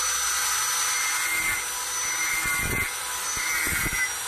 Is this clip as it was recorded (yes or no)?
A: yes